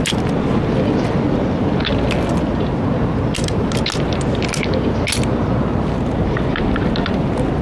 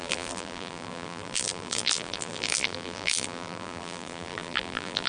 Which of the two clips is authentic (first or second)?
first